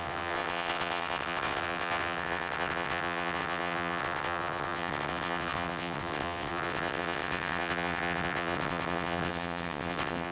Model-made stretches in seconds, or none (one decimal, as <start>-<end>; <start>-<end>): 0.0-10.3